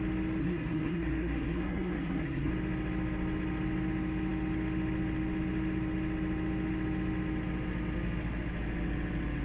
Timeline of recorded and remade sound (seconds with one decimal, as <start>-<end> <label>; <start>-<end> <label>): 0.0-0.4 recorded; 0.4-2.5 remade; 2.5-9.4 recorded